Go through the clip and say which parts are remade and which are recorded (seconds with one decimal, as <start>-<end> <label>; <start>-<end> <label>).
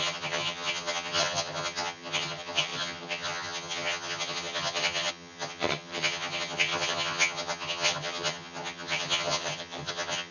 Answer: 0.0-10.3 remade